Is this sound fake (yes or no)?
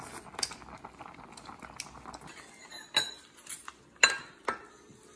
no